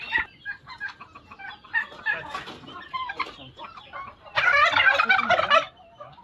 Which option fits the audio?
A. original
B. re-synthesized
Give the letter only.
A